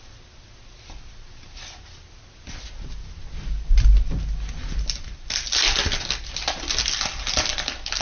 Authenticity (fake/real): real